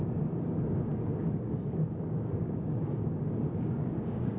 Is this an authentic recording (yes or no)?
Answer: no